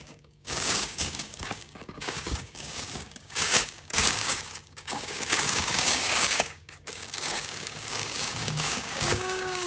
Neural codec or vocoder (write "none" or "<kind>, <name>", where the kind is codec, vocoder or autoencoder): codec, DAC